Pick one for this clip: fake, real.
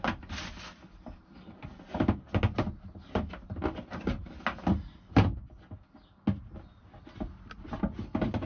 real